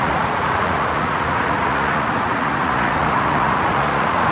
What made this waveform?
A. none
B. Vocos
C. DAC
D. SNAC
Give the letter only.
B